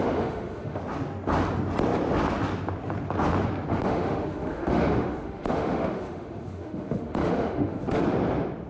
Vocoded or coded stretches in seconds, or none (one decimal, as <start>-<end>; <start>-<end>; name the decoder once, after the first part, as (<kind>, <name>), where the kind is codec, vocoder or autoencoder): 0.0-0.8 (autoencoder, DAC-VAE); 3.7-8.0